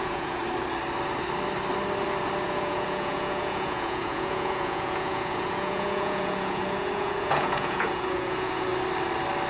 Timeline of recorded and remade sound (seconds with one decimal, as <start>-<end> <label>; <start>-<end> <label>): 0.0-0.4 remade; 0.4-2.4 recorded; 2.4-8.7 remade; 8.7-9.5 recorded